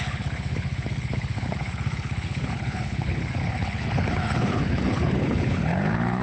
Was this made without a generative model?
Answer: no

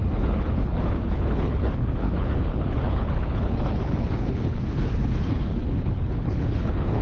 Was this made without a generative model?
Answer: no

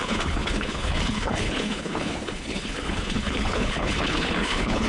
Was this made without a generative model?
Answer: no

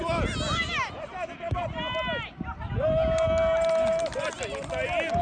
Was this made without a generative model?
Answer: yes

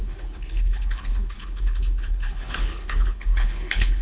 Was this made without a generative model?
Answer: no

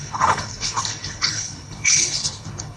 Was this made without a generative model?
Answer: no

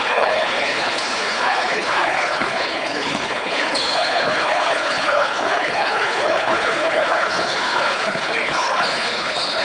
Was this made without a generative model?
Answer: no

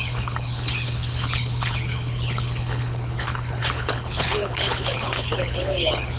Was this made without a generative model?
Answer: no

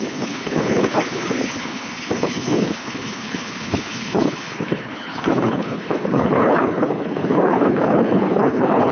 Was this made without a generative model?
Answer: no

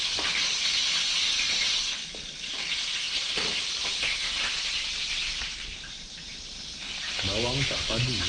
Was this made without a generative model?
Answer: yes